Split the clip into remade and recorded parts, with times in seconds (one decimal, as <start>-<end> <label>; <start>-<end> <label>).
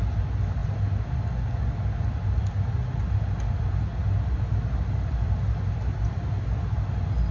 0.0-7.3 recorded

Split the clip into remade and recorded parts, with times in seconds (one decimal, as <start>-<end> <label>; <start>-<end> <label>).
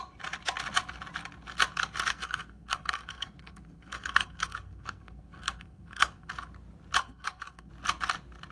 0.0-2.1 recorded; 2.1-6.3 remade; 6.3-7.0 recorded; 7.0-7.7 remade; 7.7-8.5 recorded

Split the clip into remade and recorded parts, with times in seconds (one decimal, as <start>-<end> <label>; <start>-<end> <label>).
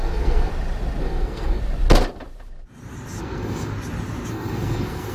0.0-0.5 remade; 0.5-1.0 recorded; 1.0-1.6 remade; 1.6-3.2 recorded; 3.2-3.7 remade; 3.7-4.3 recorded; 4.3-5.1 remade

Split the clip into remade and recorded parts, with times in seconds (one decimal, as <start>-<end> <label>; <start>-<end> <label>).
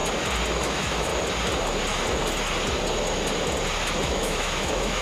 0.0-0.6 recorded; 0.6-1.1 remade; 1.1-4.0 recorded; 4.0-5.0 remade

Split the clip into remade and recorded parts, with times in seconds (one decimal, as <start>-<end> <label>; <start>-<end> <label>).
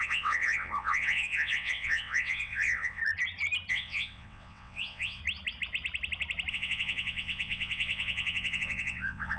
0.0-3.0 remade; 3.0-3.7 recorded; 3.7-5.2 remade; 5.2-6.5 recorded; 6.5-9.4 remade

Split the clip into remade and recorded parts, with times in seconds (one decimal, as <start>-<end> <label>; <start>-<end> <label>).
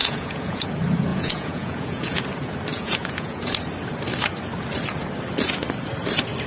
0.0-0.7 remade; 0.7-1.1 recorded; 1.1-2.2 remade; 2.2-2.7 recorded; 2.7-3.5 remade; 3.5-6.5 recorded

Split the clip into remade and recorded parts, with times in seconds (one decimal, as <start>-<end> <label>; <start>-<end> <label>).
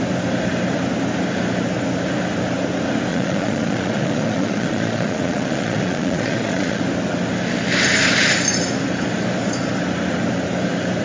0.0-3.1 recorded; 3.1-6.8 remade; 6.8-11.0 recorded